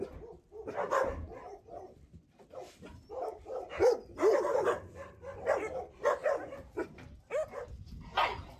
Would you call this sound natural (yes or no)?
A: yes